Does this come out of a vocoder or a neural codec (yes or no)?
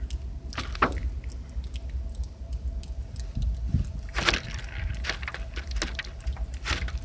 no